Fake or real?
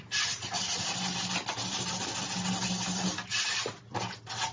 real